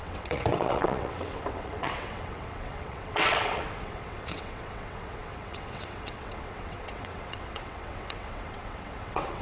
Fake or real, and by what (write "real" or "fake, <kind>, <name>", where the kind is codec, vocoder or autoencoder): fake, vocoder, WaveNeXt